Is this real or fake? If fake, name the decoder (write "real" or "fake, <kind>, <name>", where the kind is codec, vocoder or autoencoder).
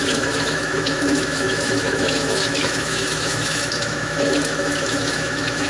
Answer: fake, autoencoder, DAC-VAE